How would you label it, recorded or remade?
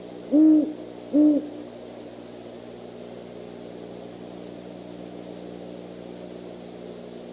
recorded